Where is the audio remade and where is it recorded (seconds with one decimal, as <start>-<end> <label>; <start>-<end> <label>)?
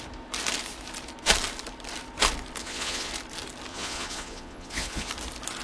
0.0-2.6 recorded; 2.6-3.1 remade; 3.1-3.7 recorded; 3.7-5.1 remade; 5.1-5.6 recorded